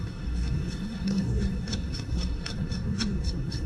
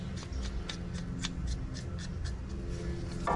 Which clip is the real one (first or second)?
second